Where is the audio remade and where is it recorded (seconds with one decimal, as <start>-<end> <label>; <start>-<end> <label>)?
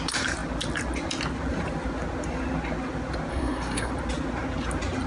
0.0-3.3 recorded; 3.3-3.9 remade; 3.9-5.1 recorded